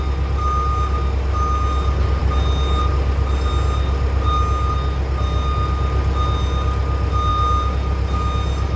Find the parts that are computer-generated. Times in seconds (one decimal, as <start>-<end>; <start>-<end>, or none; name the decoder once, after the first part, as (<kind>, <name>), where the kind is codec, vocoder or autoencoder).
none